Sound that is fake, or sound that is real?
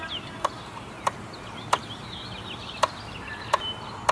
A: real